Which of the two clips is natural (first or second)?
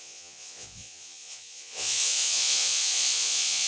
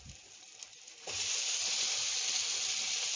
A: second